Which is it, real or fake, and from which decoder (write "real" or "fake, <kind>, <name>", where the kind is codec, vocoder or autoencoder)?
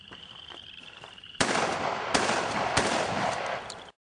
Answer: fake, vocoder, BigVGAN v2